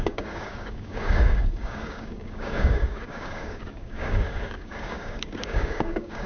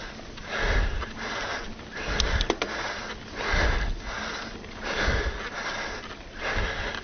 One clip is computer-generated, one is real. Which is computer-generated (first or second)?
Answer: first